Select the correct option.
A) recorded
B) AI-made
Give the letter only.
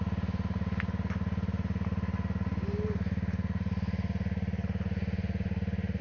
A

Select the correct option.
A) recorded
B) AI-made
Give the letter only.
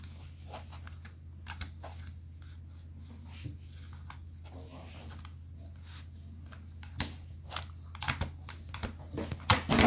A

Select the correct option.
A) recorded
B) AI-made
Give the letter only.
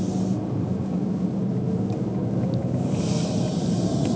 A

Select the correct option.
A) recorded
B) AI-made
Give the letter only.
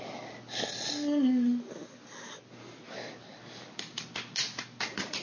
A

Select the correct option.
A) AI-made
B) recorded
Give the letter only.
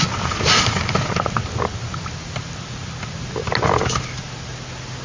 B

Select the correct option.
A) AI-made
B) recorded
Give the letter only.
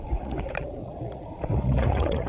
A